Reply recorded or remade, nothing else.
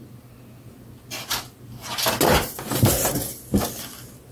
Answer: recorded